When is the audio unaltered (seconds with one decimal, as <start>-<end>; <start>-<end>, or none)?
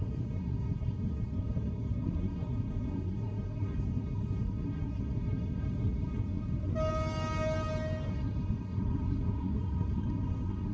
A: 6.7-8.1